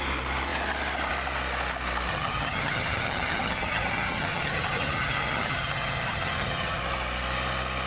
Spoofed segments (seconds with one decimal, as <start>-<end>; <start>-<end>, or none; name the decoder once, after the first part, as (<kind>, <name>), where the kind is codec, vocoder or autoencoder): 2.1-6.8 (vocoder, HiFi-GAN)